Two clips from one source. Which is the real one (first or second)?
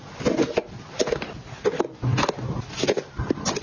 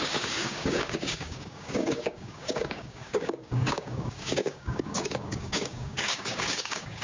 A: first